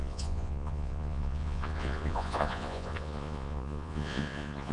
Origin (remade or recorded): remade